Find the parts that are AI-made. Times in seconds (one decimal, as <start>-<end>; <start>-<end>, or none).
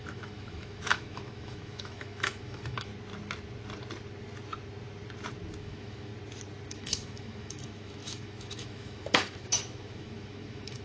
0.0-2.9; 5.6-6.1; 6.7-10.8